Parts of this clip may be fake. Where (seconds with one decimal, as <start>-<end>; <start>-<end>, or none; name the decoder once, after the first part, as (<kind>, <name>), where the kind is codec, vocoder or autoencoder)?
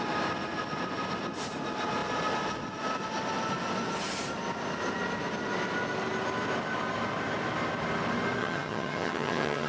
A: 8.4-9.7 (vocoder, HiFi-GAN)